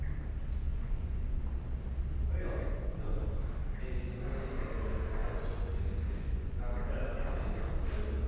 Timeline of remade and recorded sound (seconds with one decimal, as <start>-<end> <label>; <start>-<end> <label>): 0.0-0.7 recorded; 0.7-1.4 remade; 1.4-2.3 recorded; 2.3-3.4 remade; 3.4-5.2 recorded; 5.2-6.6 remade; 6.6-8.3 recorded